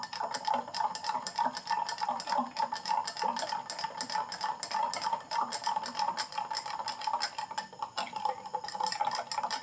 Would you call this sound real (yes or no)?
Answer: yes